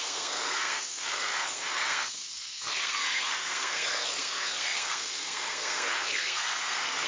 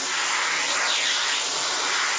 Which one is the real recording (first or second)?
second